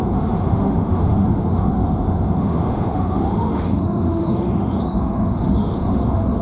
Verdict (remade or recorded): remade